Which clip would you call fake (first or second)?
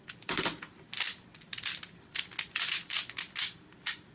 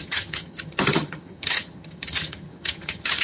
second